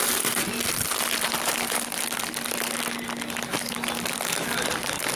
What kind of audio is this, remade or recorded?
remade